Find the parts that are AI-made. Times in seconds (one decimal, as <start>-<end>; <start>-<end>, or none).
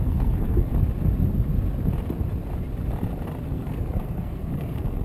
0.0-0.7; 3.5-5.0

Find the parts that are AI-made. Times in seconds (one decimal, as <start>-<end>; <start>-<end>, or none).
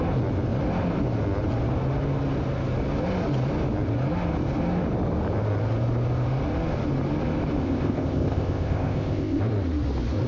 7.6-9.4